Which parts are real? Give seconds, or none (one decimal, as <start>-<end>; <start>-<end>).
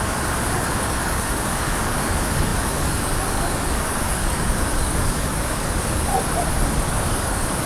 6.1-6.9